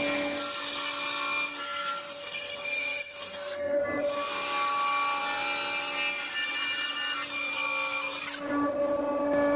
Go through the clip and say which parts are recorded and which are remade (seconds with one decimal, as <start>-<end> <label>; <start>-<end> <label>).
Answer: 0.0-1.5 recorded; 1.5-3.8 remade; 3.8-9.6 recorded